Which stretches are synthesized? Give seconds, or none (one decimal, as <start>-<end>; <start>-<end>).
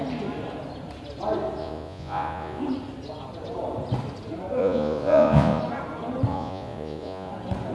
1.6-2.6; 4.6-5.6; 6.3-7.3